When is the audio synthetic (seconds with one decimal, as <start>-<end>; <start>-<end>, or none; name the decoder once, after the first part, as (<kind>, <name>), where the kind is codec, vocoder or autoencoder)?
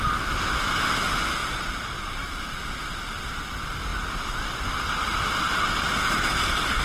none